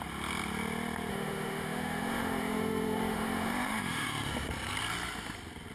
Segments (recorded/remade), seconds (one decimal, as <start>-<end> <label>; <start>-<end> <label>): 0.0-1.1 recorded; 1.1-4.5 remade; 4.5-5.7 recorded